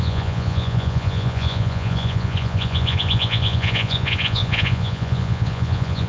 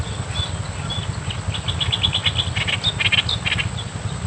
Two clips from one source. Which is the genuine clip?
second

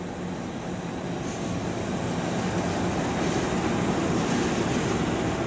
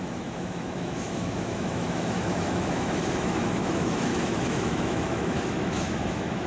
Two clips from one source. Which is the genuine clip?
first